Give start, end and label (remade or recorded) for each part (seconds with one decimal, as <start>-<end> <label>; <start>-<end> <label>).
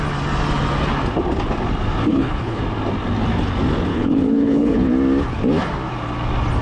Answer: 0.0-2.1 recorded; 2.1-2.6 remade; 2.6-3.9 recorded; 3.9-4.9 remade; 4.9-6.6 recorded